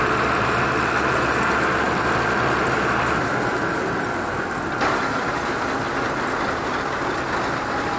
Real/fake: fake